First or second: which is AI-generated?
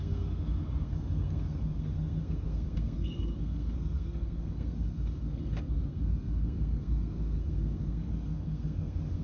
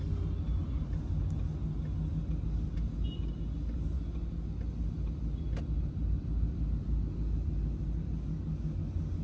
first